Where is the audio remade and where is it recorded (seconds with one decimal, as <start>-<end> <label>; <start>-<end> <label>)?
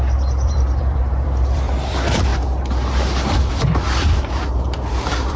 0.0-2.3 remade; 2.3-3.5 recorded; 3.5-5.4 remade